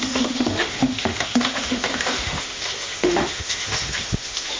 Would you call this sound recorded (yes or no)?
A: no